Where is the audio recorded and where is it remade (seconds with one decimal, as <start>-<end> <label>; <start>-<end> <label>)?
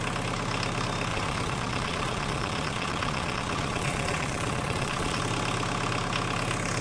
0.0-1.1 recorded; 1.1-5.2 remade; 5.2-6.8 recorded